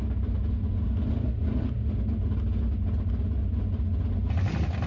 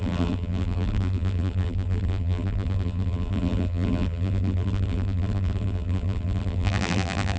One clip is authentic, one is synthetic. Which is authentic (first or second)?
first